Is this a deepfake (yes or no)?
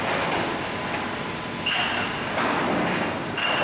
no